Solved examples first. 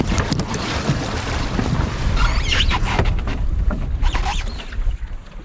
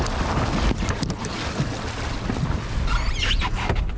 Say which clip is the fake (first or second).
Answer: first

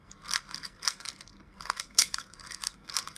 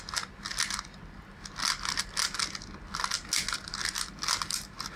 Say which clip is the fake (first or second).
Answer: first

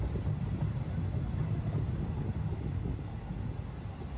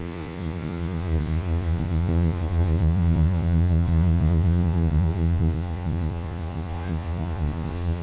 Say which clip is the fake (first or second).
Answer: second